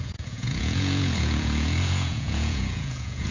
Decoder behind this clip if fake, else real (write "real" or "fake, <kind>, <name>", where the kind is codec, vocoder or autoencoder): fake, vocoder, Vocos